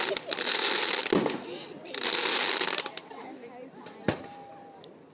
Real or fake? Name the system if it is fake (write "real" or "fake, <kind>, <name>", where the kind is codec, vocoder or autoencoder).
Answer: real